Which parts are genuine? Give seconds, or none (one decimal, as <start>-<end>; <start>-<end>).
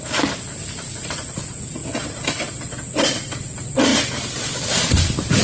0.0-1.8; 2.7-3.9; 4.7-5.4